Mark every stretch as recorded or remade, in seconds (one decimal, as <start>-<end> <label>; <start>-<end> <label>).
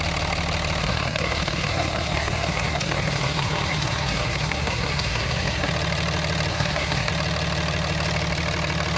0.0-0.8 recorded; 0.8-5.7 remade; 5.7-6.5 recorded; 6.5-7.1 remade; 7.1-9.0 recorded